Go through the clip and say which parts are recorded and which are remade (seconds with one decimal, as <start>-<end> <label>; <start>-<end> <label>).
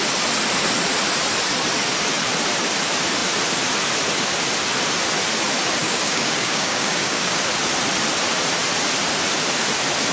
0.0-5.8 recorded; 5.8-7.4 remade; 7.4-10.1 recorded